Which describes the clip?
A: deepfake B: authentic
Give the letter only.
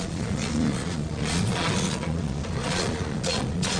A